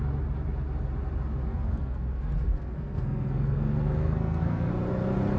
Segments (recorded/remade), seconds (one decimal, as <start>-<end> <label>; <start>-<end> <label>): 0.0-1.5 recorded; 1.5-4.7 remade; 4.7-5.4 recorded